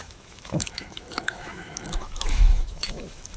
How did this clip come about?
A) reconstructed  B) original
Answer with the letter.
A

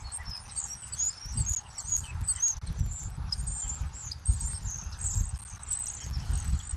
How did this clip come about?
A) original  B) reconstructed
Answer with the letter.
A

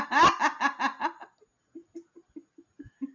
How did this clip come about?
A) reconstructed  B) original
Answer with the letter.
B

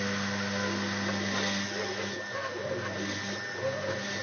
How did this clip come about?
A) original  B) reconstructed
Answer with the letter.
A